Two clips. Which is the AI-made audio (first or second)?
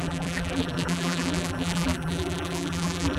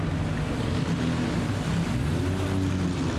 first